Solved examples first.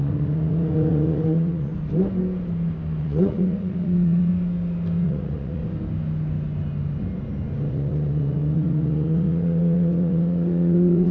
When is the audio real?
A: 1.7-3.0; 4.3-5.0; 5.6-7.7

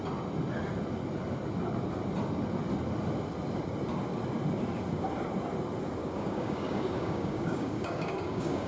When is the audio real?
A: 0.0-6.0

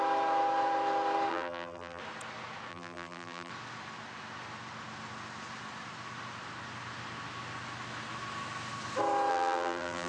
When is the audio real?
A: 0.0-1.3; 2.0-2.7; 3.5-9.3

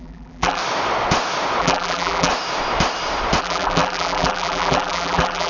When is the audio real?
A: 0.6-1.6; 2.3-3.4

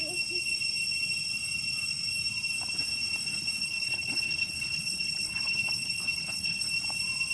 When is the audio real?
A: 0.0-3.6; 6.7-7.3

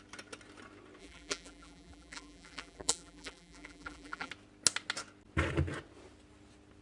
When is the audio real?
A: 0.0-1.0; 4.3-6.8

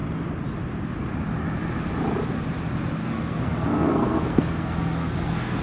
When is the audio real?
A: 0.0-3.0

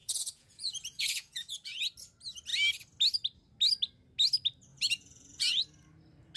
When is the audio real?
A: 1.8-4.7; 5.6-6.4